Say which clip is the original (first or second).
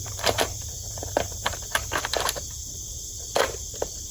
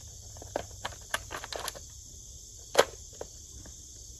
second